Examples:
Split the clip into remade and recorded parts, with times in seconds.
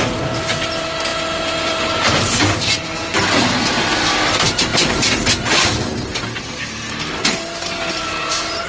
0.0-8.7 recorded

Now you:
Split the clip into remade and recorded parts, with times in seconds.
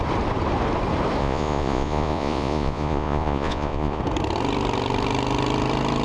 0.0-1.2 recorded; 1.2-4.0 remade; 4.0-6.0 recorded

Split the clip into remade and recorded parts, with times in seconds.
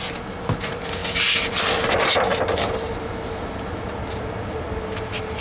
0.0-5.4 recorded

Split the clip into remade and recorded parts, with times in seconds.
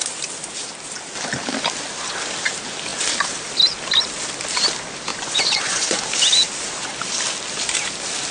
0.0-5.1 recorded; 5.1-6.0 remade; 6.0-8.3 recorded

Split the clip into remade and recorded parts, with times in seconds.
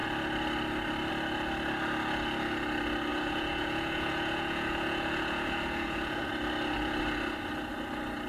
0.0-3.1 recorded; 3.1-6.3 remade; 6.3-8.3 recorded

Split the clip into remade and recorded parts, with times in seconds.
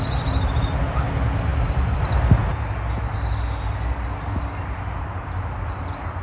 0.0-6.2 recorded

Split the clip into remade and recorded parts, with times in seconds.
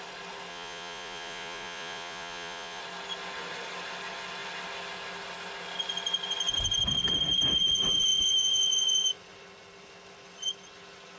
0.0-0.5 recorded; 0.5-2.8 remade; 2.8-11.2 recorded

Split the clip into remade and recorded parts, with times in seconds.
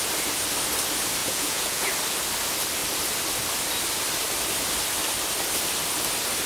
0.0-1.2 recorded; 1.2-1.9 remade; 1.9-6.5 recorded